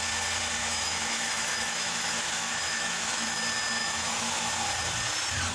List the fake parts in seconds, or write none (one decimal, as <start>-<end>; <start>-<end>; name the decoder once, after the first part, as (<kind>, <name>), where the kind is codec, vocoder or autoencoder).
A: 0.6-3.4 (autoencoder, DAC-VAE); 3.8-4.5